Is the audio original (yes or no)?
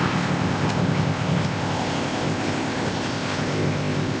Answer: no